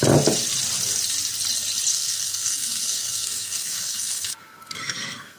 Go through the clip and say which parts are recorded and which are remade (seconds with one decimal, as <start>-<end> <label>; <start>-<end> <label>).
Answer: 0.0-1.9 recorded; 1.9-5.4 remade